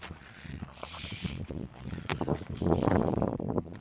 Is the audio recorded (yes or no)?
no